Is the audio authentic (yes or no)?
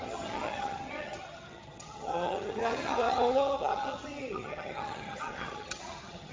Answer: no